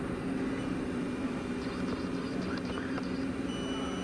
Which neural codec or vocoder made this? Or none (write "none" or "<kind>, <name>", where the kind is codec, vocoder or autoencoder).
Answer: none